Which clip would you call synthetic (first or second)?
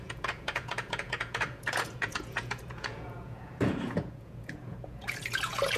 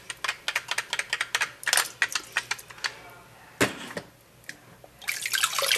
first